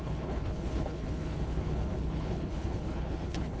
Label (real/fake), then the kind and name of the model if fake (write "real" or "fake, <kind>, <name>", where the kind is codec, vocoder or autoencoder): fake, codec, HILCodec